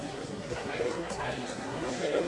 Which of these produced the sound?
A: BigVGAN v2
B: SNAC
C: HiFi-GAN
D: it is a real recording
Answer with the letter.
B